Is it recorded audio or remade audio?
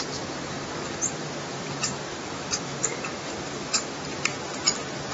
recorded